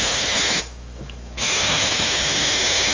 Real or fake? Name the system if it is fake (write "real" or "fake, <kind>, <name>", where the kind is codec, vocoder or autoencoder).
fake, autoencoder, DAC-VAE